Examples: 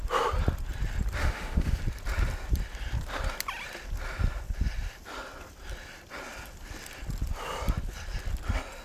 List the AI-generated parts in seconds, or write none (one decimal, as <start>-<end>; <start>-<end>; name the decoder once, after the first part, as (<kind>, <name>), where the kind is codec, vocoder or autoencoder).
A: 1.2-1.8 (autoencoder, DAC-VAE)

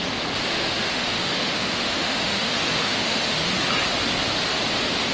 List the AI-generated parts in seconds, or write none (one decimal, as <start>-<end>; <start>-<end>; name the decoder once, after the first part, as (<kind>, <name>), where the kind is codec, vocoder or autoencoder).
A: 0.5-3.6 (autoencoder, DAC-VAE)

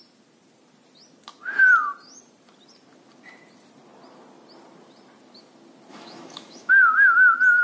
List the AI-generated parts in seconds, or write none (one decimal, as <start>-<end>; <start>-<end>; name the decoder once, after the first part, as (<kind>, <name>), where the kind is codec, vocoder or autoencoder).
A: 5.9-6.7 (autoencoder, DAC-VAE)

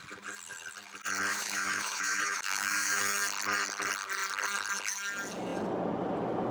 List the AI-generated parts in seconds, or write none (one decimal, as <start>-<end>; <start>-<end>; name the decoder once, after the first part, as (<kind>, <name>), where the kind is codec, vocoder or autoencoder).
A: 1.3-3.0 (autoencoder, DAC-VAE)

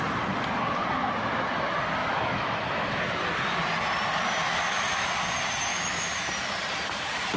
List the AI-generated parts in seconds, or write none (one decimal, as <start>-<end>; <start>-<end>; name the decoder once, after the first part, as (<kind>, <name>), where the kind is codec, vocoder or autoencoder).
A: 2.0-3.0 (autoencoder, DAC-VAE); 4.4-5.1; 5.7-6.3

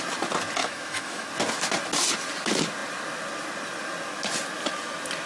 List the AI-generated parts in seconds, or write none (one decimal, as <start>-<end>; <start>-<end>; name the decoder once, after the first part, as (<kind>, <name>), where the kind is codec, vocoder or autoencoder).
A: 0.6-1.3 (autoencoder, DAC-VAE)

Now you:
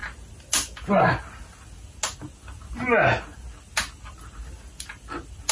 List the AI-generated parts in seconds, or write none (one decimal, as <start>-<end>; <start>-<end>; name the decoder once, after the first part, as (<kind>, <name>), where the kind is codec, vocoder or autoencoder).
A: none